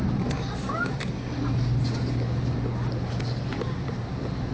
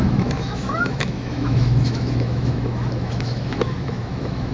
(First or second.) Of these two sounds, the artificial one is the second